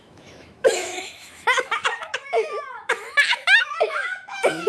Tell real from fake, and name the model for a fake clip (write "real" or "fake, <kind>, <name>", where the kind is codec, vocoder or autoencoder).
fake, autoencoder, DAC-VAE